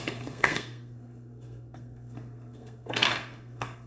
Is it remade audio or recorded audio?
remade